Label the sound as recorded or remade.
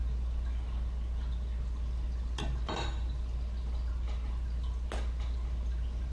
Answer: recorded